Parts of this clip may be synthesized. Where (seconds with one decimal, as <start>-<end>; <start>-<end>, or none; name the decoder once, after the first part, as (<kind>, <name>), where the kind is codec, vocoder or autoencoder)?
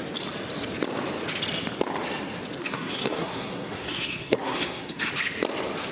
2.6-5.1 (codec, SNAC)